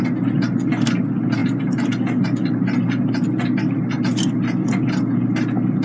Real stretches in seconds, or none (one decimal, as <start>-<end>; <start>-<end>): 0.0-5.8